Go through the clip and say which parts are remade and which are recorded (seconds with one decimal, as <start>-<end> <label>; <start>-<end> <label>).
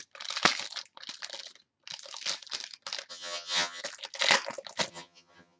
0.0-3.1 recorded; 3.1-3.8 remade; 3.8-4.9 recorded; 4.9-5.6 remade